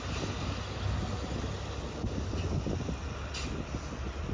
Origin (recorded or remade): recorded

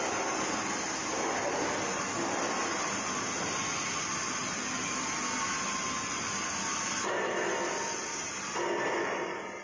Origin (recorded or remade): recorded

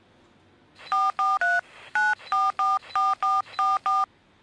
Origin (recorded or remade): recorded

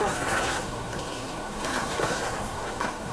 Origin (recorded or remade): remade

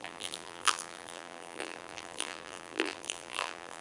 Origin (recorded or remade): remade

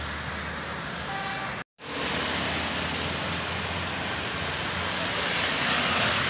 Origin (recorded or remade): recorded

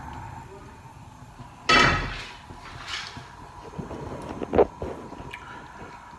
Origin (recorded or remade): recorded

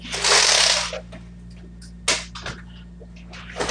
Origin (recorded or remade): recorded